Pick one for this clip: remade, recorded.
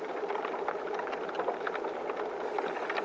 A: recorded